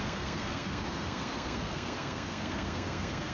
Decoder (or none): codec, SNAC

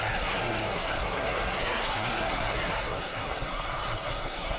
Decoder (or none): codec, SNAC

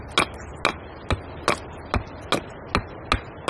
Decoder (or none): none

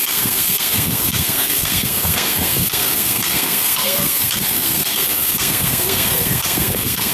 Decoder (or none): codec, SNAC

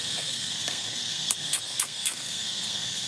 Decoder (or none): codec, SNAC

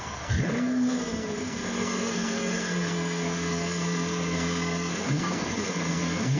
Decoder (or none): codec, SNAC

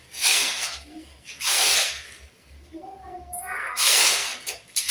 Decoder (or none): codec, SNAC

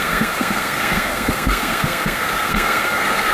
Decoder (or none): codec, SNAC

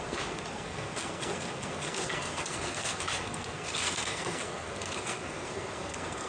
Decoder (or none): codec, SNAC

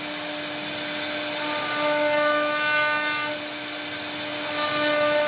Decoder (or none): none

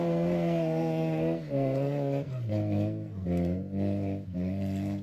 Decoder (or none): codec, SNAC